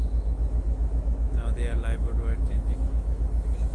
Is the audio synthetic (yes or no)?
yes